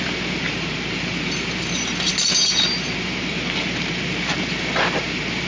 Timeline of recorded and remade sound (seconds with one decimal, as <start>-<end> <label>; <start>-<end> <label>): 0.0-5.5 recorded